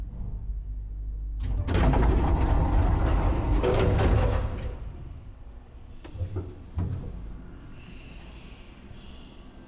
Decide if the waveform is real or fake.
real